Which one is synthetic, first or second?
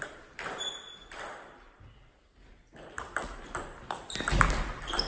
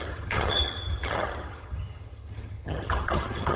second